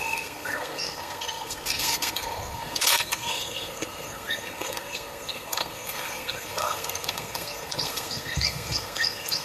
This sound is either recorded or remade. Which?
remade